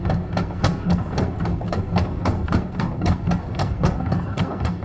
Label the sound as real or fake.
fake